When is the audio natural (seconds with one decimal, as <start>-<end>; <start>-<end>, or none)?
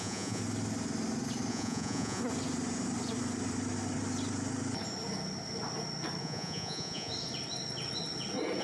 0.4-1.5; 2.2-6.2; 7.1-8.6